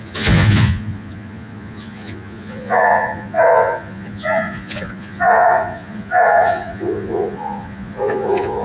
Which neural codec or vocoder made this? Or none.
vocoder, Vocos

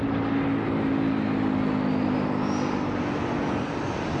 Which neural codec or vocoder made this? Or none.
none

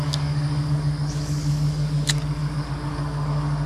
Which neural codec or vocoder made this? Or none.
codec, DAC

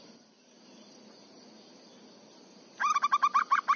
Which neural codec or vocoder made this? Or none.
none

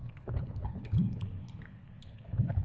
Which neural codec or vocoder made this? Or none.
codec, HILCodec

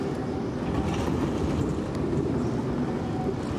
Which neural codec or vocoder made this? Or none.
none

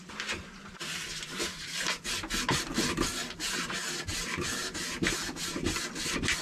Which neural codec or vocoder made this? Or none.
none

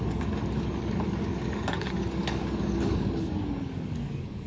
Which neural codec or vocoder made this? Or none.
codec, DAC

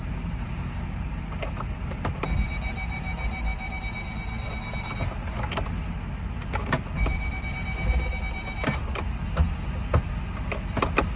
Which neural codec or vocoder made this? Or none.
none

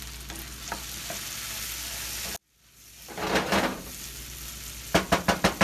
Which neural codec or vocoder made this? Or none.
none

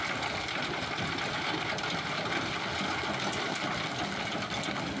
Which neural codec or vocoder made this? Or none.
none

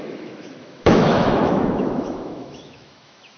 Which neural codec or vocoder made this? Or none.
autoencoder, DAC-VAE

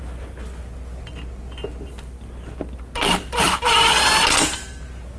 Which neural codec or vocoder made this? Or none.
none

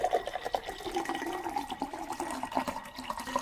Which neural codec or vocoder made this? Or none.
none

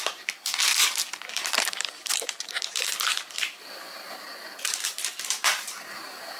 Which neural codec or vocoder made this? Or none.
vocoder, BigVGAN v2